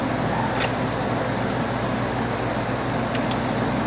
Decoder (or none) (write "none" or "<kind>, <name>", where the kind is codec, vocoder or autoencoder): none